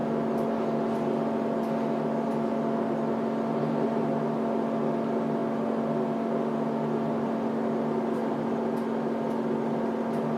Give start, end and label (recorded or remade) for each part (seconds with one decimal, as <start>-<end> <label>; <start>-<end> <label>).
0.0-10.4 recorded